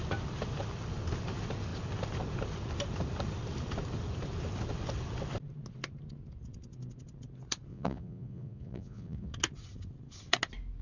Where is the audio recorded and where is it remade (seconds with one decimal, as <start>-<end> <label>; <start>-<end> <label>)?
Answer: 0.0-7.7 recorded; 7.7-9.3 remade; 9.3-10.8 recorded